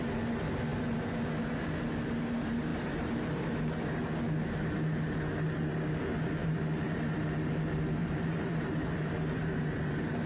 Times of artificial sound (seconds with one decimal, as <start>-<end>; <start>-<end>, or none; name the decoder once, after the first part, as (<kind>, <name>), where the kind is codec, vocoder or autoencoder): 2.7-3.4 (vocoder, BigVGAN v2); 6.4-7.0; 8.0-10.3